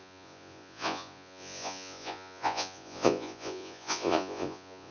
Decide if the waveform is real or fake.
fake